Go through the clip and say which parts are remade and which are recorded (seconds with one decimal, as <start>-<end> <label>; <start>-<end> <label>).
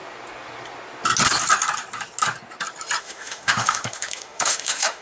0.0-3.0 recorded; 3.0-5.0 remade